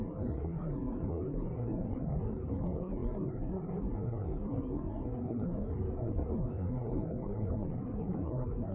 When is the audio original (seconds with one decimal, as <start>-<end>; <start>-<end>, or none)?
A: none